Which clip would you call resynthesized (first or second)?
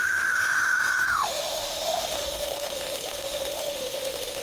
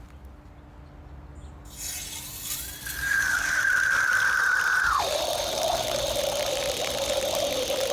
first